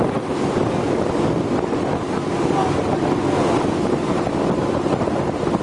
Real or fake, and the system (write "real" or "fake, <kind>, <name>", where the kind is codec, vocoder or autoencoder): real